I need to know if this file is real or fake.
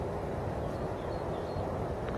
real